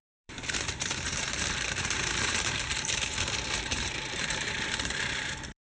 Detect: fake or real fake